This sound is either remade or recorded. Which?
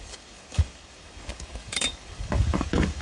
remade